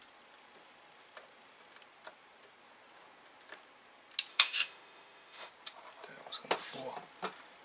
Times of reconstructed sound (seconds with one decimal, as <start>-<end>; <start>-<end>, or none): 4.3-5.5

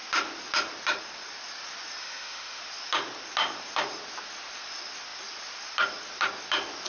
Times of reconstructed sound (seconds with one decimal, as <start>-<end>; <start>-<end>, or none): 2.0-2.6

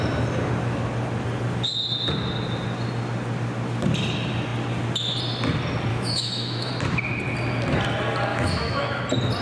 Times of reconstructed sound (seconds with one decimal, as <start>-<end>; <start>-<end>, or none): 5.9-6.7; 8.3-9.0

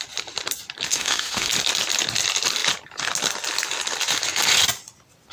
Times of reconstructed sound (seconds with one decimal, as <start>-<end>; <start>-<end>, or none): 0.9-1.5

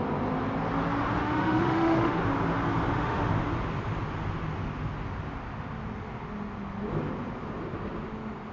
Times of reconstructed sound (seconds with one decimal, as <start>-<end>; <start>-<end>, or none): 1.2-2.2; 2.9-3.5

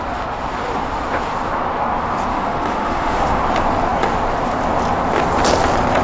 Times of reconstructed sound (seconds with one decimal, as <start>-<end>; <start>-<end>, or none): 2.3-3.4

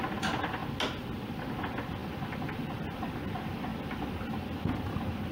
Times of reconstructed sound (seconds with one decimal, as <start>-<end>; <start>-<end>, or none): none